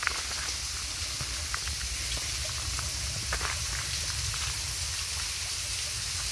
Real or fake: real